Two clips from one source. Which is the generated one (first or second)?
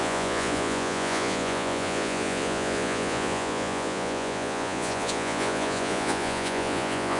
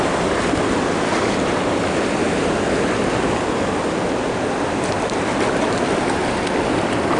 first